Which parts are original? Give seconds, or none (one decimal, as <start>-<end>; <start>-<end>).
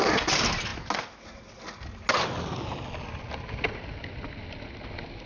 0.0-5.3